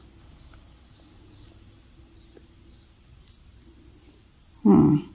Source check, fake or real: real